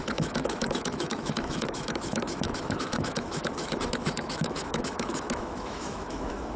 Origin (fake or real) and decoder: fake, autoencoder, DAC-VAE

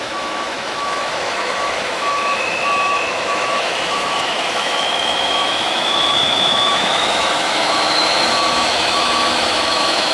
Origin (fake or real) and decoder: fake, autoencoder, DAC-VAE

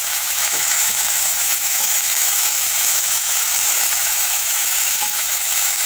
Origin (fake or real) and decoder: fake, autoencoder, DAC-VAE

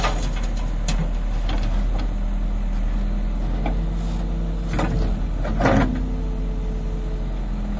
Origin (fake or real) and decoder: real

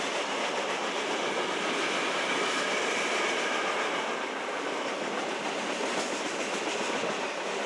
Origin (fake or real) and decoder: real